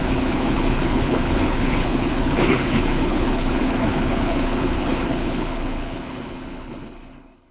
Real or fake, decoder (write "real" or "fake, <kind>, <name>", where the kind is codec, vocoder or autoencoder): fake, codec, HILCodec